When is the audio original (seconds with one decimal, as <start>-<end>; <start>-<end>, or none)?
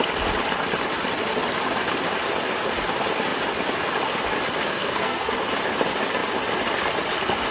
0.0-4.7; 5.3-7.5